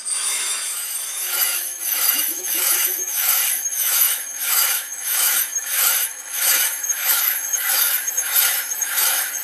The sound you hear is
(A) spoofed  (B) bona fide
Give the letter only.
A